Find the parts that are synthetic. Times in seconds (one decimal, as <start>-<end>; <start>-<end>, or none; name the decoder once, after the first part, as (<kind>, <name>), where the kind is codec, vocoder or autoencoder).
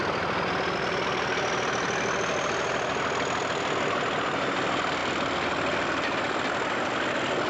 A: none